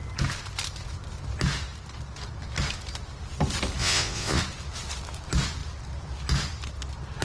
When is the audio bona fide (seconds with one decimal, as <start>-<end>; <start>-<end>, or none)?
0.0-3.8; 4.4-7.2